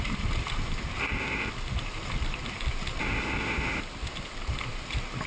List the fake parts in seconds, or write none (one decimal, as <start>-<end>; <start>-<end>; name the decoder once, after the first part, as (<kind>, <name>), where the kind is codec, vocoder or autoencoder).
1.0-1.5 (codec, ZipCodec); 3.0-3.8